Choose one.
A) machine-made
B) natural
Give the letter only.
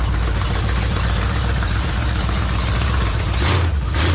A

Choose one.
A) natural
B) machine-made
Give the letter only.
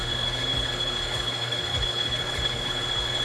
B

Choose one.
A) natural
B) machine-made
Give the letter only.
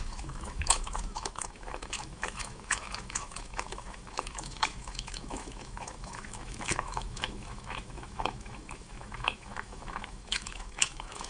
B